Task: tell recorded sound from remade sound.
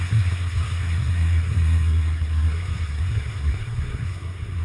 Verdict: remade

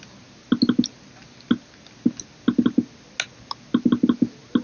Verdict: recorded